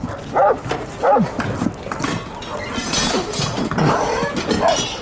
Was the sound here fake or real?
real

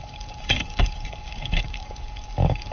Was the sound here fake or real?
fake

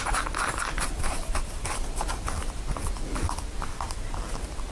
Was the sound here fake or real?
real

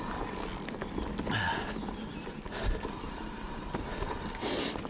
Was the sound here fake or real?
real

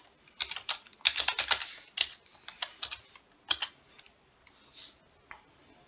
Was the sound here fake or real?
real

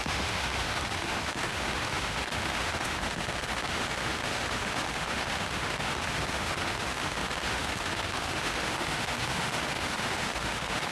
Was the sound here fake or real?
fake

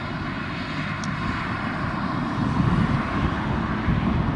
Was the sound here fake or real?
real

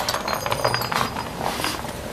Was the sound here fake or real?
fake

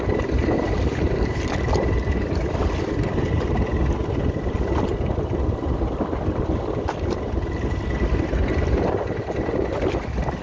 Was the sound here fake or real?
real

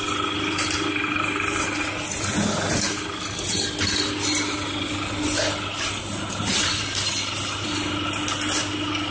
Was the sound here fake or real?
real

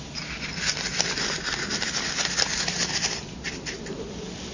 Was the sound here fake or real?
real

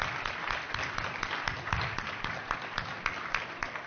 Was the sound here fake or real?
real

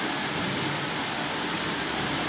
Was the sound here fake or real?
real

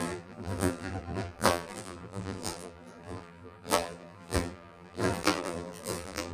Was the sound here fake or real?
fake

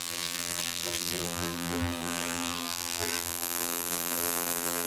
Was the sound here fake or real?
fake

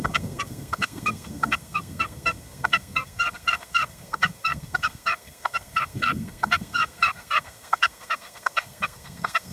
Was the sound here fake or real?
fake